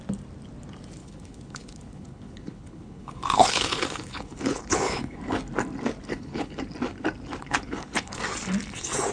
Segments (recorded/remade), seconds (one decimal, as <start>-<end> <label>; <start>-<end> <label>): 0.0-1.0 recorded; 1.0-5.2 remade; 5.2-6.1 recorded; 6.1-6.6 remade; 6.6-7.4 recorded; 7.4-8.2 remade; 8.2-9.1 recorded